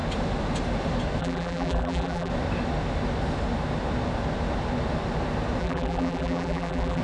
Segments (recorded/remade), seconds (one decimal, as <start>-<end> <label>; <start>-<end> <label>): 0.0-1.2 recorded; 1.2-2.3 remade; 2.3-5.6 recorded; 5.6-7.0 remade